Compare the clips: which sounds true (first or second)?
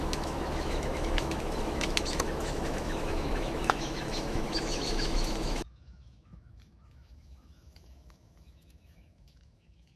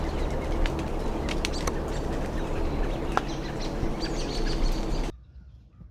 second